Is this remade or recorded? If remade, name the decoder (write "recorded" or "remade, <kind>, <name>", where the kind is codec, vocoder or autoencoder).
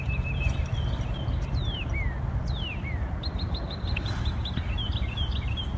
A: recorded